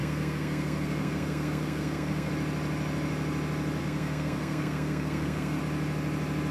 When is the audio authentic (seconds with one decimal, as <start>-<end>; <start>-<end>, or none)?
2.3-3.8; 5.6-6.5